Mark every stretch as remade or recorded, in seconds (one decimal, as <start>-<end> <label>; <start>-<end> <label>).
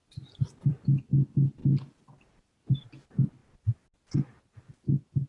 0.0-1.6 recorded; 1.6-2.5 remade; 2.5-5.3 recorded